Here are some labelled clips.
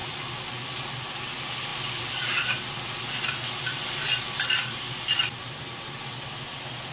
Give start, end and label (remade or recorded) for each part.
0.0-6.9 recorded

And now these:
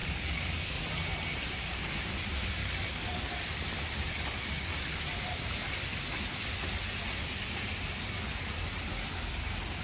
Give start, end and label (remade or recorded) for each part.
0.0-0.7 remade; 0.7-2.6 recorded; 2.6-3.3 remade; 3.3-9.8 recorded

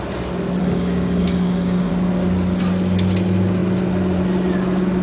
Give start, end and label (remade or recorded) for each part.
0.0-0.6 recorded; 0.6-1.9 remade; 1.9-5.0 recorded

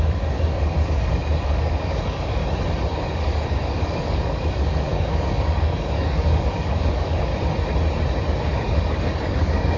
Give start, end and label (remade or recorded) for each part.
0.0-2.4 remade; 2.4-3.1 recorded; 3.1-7.3 remade; 7.3-8.3 recorded; 8.3-9.8 remade

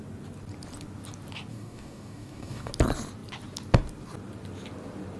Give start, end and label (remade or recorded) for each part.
0.0-1.5 recorded; 1.5-2.7 remade; 2.7-5.2 recorded